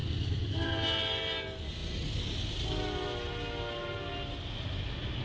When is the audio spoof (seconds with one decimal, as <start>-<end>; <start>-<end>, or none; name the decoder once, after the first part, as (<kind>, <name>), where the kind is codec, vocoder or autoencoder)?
none